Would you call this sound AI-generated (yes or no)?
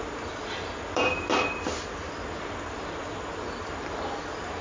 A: yes